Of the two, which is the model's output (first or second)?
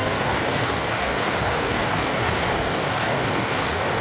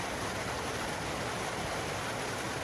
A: first